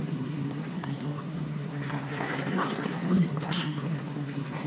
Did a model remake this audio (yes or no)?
yes